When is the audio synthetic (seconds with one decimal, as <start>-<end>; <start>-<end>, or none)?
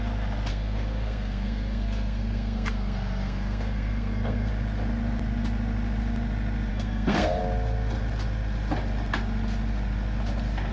0.5-4.5; 6.7-7.4